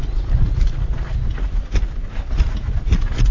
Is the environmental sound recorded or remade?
recorded